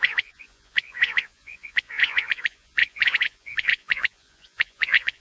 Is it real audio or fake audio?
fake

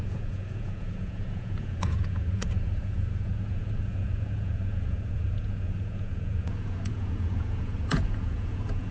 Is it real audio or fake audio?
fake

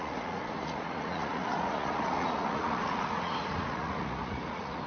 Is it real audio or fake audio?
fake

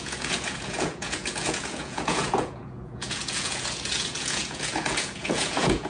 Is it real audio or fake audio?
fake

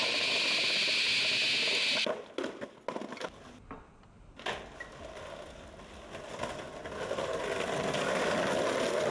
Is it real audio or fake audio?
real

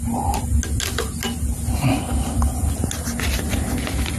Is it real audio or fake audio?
real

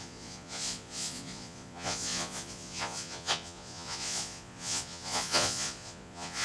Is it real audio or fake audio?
fake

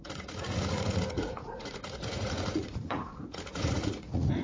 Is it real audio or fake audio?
fake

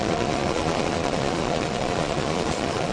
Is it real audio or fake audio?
fake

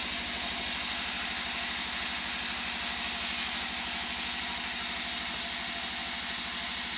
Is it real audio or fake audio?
real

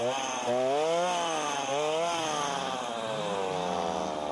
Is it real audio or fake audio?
real